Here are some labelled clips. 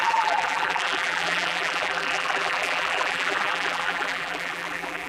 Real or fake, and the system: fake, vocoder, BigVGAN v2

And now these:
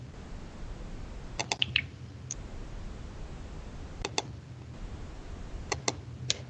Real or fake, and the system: real